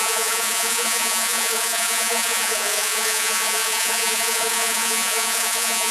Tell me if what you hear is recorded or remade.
remade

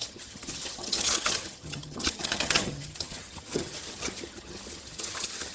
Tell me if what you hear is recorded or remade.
remade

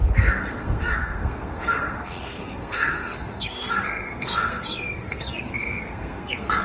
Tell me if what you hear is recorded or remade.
remade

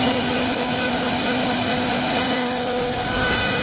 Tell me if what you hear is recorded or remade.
recorded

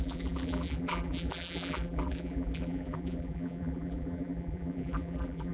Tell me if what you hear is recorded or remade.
remade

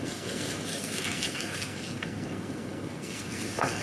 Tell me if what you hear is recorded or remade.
remade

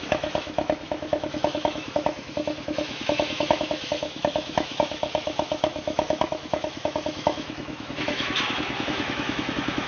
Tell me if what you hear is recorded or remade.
remade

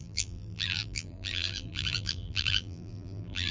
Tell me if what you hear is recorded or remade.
remade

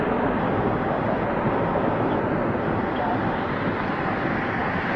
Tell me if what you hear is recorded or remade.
recorded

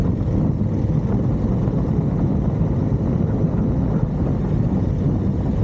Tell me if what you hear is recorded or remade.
recorded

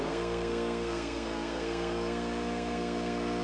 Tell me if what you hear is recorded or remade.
remade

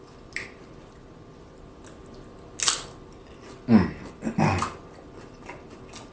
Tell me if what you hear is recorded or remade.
recorded